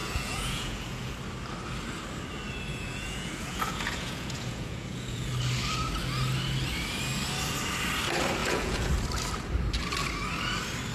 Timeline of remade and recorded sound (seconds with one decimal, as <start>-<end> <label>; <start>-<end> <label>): 0.0-1.1 remade; 1.1-2.7 recorded; 2.7-5.3 remade; 5.3-8.4 recorded; 8.4-8.9 remade; 8.9-10.9 recorded